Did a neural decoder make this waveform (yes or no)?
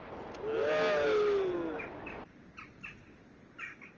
no